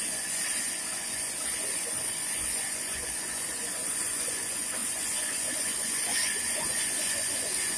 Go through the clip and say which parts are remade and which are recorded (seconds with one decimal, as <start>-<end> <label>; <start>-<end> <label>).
0.0-7.8 remade